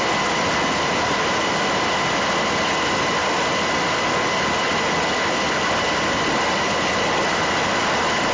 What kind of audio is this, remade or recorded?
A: recorded